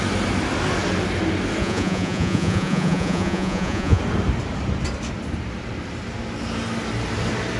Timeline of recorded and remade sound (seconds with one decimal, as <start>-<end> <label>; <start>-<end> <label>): 0.0-1.6 recorded; 1.6-4.0 remade; 4.0-7.6 recorded